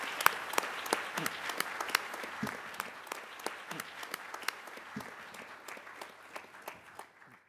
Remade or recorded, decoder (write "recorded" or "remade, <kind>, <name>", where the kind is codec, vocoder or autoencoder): recorded